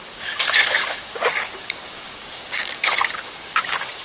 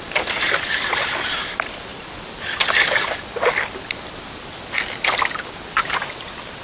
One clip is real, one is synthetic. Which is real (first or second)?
second